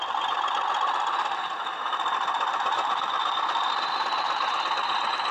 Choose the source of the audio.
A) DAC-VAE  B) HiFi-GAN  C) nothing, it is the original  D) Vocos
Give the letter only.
C